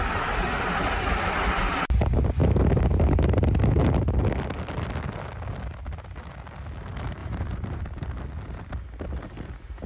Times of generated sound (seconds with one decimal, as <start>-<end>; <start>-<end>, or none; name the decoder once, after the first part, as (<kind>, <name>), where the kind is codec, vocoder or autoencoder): 7.2-7.8 (vocoder, BigVGAN v2)